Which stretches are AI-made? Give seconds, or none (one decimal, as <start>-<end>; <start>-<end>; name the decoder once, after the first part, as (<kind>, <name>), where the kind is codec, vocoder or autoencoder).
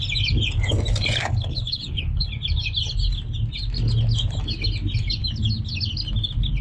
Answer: 1.2-2.3 (codec, HILCodec)